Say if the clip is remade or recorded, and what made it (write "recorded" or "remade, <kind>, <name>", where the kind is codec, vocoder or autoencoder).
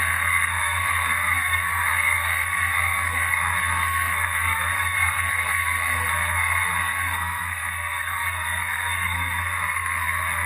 remade, codec, SNAC